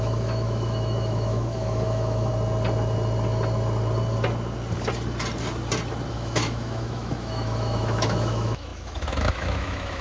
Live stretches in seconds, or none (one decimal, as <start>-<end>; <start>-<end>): 2.3-6.1